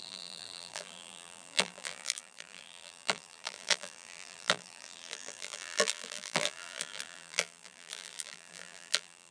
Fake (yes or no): yes